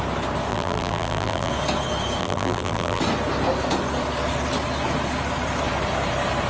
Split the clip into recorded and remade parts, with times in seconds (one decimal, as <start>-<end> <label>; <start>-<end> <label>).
0.0-0.5 recorded; 0.5-1.5 remade; 1.5-2.2 recorded; 2.2-3.0 remade; 3.0-6.5 recorded